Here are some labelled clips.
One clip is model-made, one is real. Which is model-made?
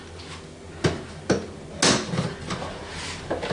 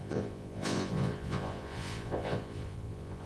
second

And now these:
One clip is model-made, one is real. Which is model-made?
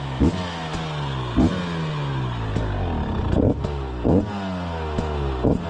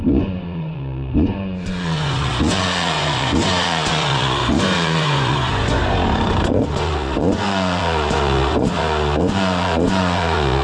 second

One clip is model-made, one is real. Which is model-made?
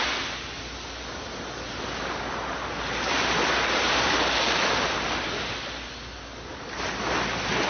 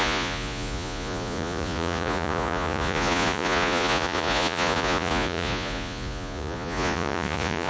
second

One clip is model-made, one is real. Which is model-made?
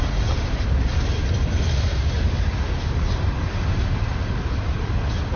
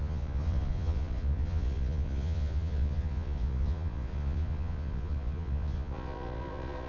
second